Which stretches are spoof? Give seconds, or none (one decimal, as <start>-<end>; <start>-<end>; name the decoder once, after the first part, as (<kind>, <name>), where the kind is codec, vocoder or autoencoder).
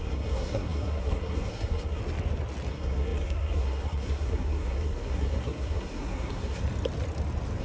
0.0-2.0 (codec, SNAC); 2.7-6.6